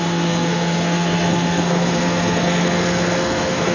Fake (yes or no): yes